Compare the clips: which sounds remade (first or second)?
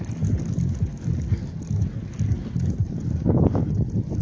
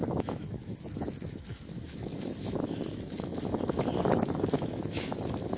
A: second